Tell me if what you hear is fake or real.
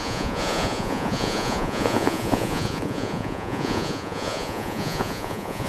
fake